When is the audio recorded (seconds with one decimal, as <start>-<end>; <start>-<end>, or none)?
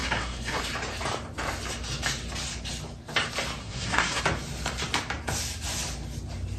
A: 0.6-3.6; 4.2-6.6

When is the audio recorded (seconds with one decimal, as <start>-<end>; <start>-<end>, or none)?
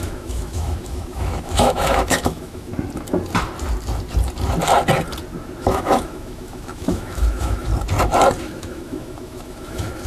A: 2.7-5.6; 7.7-8.4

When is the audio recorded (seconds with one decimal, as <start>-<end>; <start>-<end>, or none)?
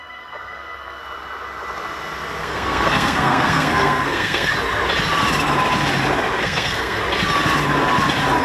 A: 1.0-2.4; 4.5-6.4; 7.0-8.4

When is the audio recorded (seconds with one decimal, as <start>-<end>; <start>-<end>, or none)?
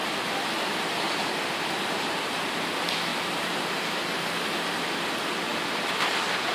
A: 2.5-3.1; 3.6-6.5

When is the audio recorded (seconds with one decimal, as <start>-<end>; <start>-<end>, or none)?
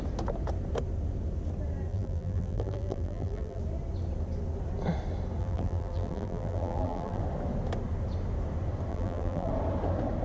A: 0.0-1.9; 3.6-5.4; 7.2-8.9; 9.5-10.2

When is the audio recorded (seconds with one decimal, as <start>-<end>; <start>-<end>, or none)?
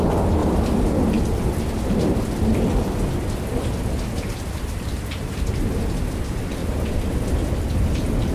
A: 0.0-0.4; 5.4-6.6; 7.3-8.3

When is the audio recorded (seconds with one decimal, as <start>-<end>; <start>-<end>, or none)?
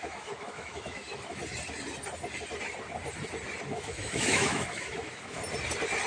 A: 1.4-3.7; 5.4-6.1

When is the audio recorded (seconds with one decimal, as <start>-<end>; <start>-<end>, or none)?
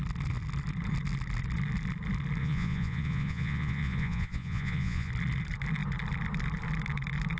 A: 0.0-2.4; 5.1-7.4